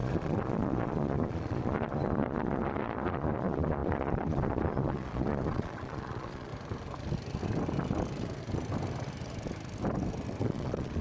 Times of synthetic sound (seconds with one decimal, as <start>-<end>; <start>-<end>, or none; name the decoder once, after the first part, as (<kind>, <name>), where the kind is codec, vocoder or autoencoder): 0.0-6.5 (vocoder, Vocos); 10.4-11.0